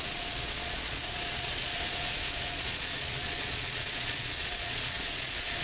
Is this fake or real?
fake